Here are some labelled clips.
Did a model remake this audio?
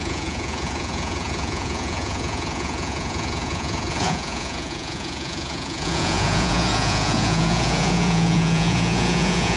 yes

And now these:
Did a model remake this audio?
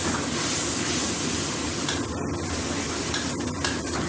no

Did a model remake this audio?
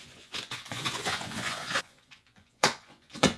yes